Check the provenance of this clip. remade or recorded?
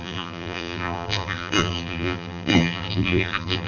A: remade